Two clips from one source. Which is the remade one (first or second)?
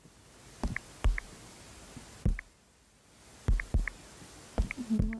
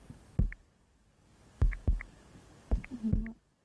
second